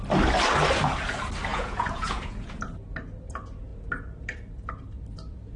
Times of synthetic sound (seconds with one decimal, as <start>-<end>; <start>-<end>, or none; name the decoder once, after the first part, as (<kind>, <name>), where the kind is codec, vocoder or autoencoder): 1.5-2.6 (vocoder, Vocos)